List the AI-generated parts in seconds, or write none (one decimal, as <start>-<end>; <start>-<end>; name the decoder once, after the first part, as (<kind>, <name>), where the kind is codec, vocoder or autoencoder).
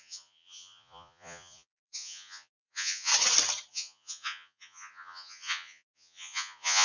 0.0-3.1 (vocoder, Vocos); 3.7-6.8